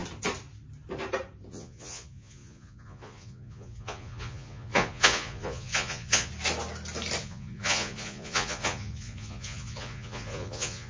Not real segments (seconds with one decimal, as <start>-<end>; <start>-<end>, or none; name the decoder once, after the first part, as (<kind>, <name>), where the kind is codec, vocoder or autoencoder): 1.5-6.3 (vocoder, Vocos); 7.2-10.9